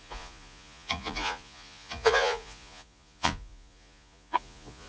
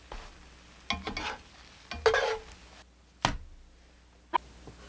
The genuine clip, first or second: second